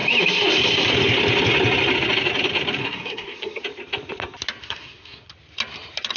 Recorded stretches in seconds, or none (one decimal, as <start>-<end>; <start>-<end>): 0.0-2.8; 3.6-4.6; 5.3-6.2